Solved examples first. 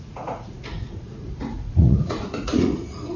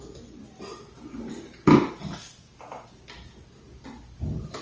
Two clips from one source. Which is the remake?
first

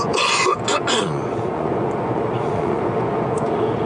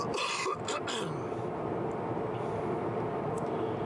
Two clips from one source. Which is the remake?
first